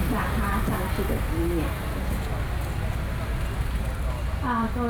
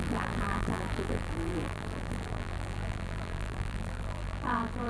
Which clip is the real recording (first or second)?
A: first